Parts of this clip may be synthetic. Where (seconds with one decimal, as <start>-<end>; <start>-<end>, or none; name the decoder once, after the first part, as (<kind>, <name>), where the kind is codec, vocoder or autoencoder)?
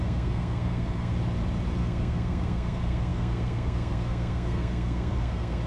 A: 0.0-1.1 (codec, SNAC); 1.8-5.7